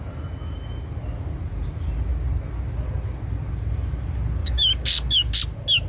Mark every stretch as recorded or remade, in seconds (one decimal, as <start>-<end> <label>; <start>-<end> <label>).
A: 0.0-4.4 recorded; 4.4-5.4 remade; 5.4-5.9 recorded